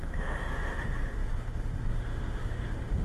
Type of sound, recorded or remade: remade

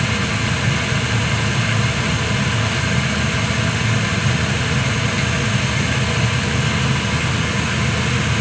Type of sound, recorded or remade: recorded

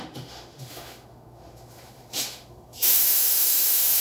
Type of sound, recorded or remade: remade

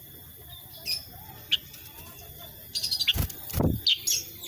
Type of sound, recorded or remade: recorded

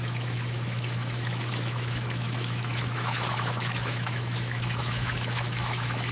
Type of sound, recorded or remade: remade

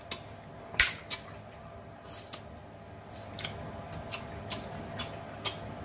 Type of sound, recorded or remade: recorded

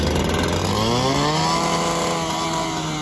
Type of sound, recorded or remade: recorded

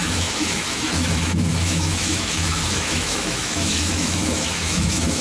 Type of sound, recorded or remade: remade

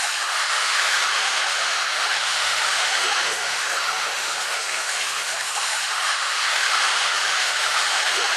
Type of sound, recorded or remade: remade